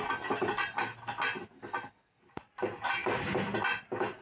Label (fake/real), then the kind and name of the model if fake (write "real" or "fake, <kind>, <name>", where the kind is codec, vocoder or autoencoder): real